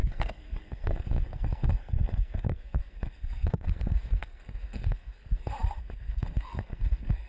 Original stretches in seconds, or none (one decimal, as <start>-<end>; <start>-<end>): none